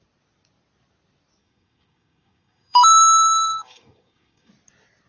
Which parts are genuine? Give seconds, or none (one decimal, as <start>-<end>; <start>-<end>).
0.0-1.4; 4.5-5.1

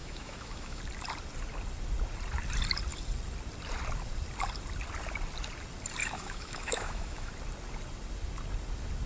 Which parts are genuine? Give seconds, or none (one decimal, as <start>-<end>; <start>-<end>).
0.8-6.0; 7.3-9.1

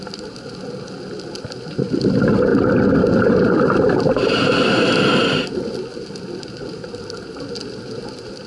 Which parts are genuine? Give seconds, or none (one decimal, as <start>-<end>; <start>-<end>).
0.0-8.5

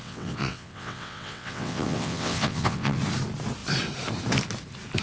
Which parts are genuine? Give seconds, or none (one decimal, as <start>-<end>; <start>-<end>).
3.0-5.0

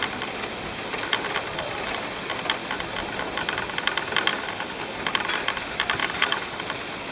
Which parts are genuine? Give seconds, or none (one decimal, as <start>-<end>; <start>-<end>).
0.0-4.3; 5.0-6.0; 6.6-7.1

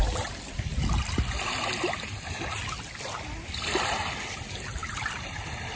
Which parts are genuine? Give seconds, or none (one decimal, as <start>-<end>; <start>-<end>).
0.0-5.8

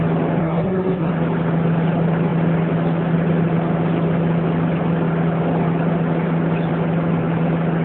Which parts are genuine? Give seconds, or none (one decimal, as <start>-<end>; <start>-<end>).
0.0-0.4; 1.1-7.8

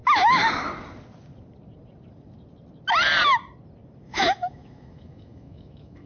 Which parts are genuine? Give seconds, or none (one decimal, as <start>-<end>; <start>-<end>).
0.0-4.1